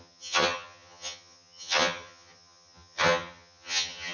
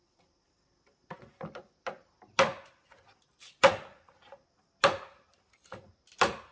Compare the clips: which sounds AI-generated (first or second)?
first